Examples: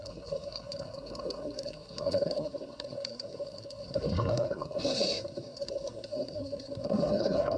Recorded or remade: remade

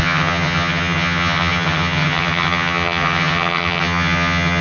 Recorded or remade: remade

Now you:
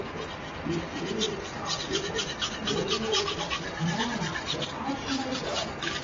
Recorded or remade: recorded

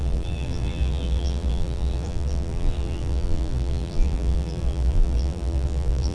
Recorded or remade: remade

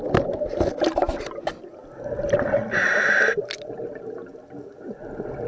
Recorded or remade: recorded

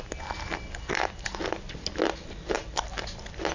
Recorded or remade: recorded